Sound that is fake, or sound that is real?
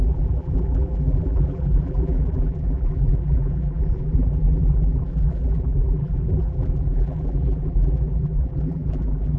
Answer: fake